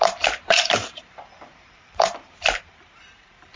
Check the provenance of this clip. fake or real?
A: fake